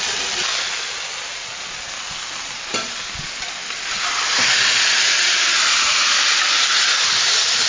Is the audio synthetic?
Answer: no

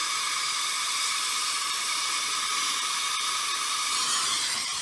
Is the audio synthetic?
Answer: yes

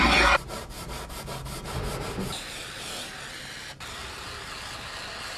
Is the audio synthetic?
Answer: no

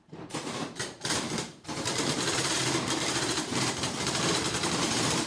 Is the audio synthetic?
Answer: yes